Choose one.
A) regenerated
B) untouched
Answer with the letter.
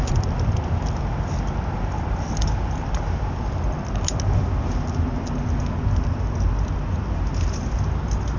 B